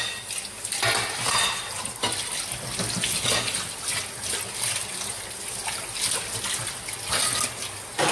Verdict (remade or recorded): recorded